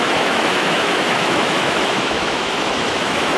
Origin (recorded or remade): remade